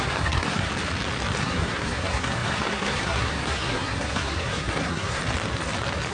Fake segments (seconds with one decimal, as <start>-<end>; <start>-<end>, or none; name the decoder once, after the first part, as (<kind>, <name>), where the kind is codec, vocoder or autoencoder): 0.0-0.7 (codec, SNAC); 1.4-5.2